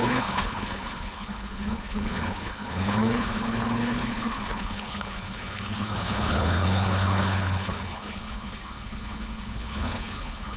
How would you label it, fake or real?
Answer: fake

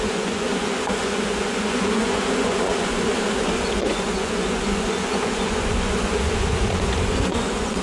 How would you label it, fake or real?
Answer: fake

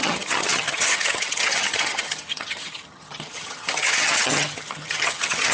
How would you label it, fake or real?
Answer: fake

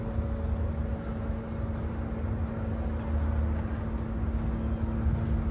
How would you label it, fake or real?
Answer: real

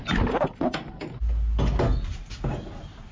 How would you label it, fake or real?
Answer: real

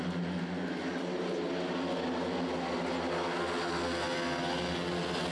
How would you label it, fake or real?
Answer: real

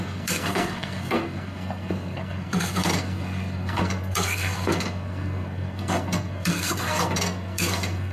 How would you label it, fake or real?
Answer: fake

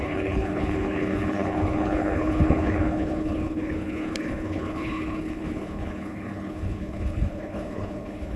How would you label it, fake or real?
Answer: fake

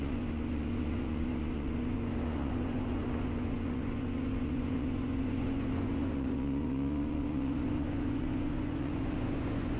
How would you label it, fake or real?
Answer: fake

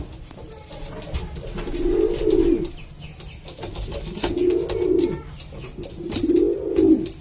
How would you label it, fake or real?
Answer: real